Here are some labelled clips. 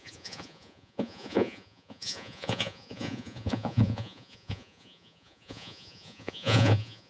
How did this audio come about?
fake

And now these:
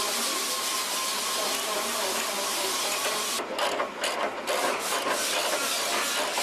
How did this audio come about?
real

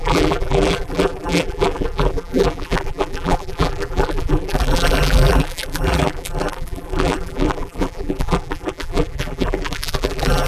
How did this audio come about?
fake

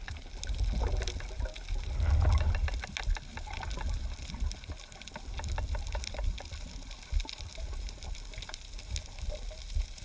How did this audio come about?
real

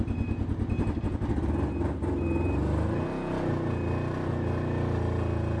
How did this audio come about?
real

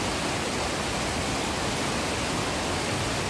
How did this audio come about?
real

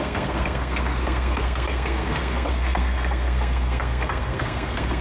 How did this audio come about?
fake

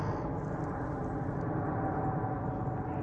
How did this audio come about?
real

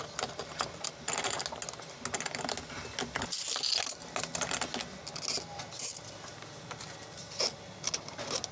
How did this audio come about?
real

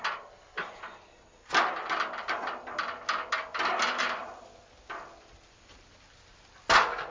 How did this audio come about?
real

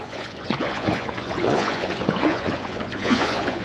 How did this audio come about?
fake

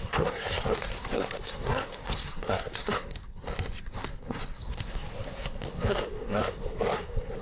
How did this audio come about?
fake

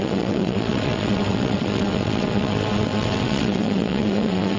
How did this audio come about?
fake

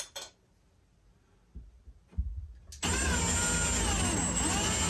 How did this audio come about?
real